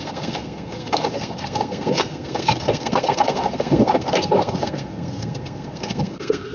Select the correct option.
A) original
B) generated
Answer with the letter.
B